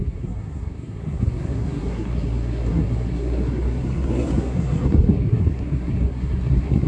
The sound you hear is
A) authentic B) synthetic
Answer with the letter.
B